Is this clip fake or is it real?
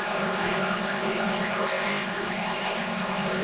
fake